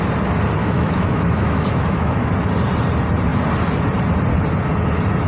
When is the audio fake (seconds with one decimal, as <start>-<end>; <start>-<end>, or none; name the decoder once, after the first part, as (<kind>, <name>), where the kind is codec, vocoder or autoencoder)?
0.6-2.3 (autoencoder, DAC-VAE)